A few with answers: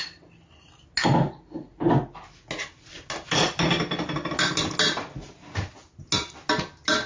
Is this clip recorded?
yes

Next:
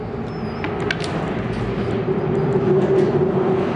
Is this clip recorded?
yes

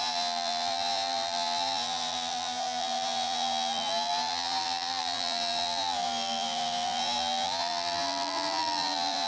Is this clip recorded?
no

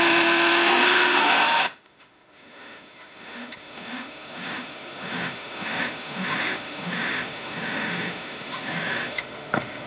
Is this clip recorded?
no